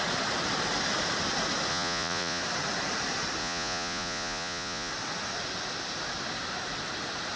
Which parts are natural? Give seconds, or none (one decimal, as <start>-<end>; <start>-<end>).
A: 0.0-1.7; 2.4-3.4; 4.9-7.4